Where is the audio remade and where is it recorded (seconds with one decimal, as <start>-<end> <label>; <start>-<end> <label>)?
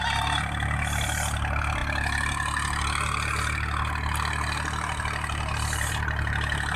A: 0.0-6.8 recorded